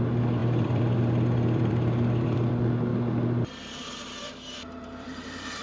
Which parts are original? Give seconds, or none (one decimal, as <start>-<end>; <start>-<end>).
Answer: 0.0-0.4; 2.5-2.9; 3.8-4.2

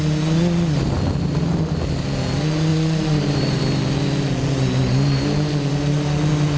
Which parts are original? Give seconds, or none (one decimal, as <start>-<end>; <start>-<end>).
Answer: 0.0-2.7; 3.6-6.6

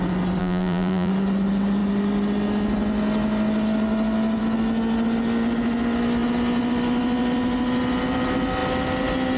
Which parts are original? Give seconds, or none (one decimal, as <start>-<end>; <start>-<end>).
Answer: 0.0-0.4; 1.1-9.4

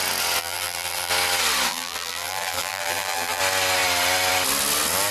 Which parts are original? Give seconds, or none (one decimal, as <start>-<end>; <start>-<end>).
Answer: 0.0-0.4; 1.1-1.7; 3.4-5.1

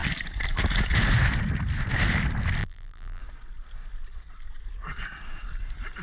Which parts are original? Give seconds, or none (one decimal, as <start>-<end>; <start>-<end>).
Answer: 0.0-2.6; 3.2-6.0

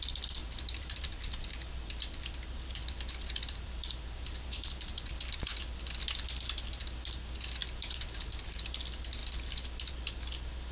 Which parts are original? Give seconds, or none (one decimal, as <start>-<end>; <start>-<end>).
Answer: 0.0-0.4; 5.7-7.6; 8.6-10.7

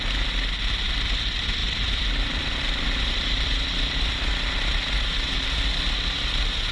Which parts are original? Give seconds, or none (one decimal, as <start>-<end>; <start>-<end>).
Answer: 0.0-1.6; 4.3-6.7